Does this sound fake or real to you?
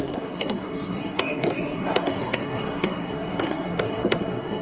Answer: fake